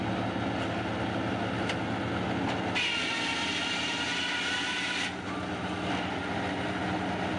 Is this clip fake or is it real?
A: real